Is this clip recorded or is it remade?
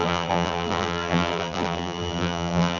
remade